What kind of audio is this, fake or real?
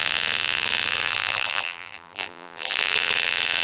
fake